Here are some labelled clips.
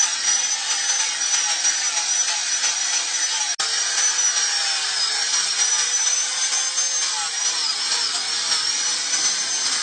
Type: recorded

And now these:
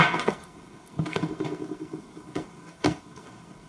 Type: remade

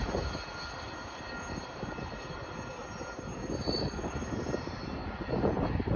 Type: recorded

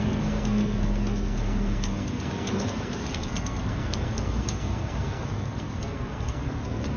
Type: remade